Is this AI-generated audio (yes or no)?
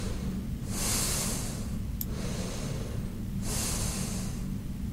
no